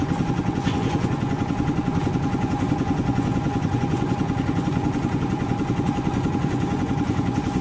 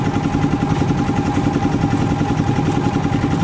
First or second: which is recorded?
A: second